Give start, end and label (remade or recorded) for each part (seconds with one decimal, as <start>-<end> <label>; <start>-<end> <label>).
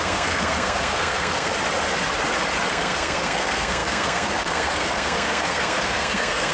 0.0-1.5 remade; 1.5-2.7 recorded; 2.7-6.5 remade